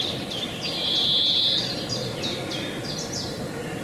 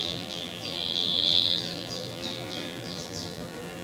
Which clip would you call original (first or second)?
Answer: first